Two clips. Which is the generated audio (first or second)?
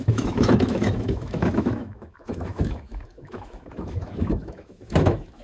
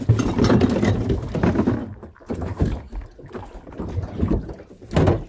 first